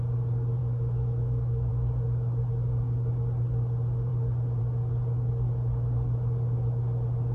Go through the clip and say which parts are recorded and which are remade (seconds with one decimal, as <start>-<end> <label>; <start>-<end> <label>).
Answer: 0.0-0.6 recorded; 0.6-1.7 remade; 1.7-7.3 recorded